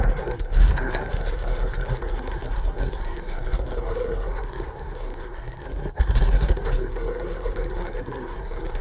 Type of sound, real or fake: fake